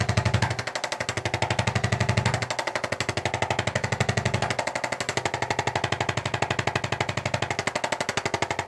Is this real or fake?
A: real